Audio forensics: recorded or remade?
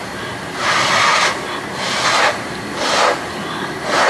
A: recorded